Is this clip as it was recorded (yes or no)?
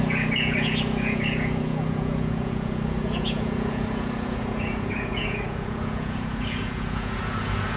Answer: no